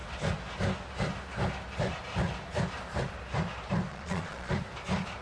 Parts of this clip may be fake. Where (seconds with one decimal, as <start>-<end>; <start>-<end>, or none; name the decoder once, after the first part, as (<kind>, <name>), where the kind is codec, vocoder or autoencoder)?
3.9-4.5 (vocoder, Vocos)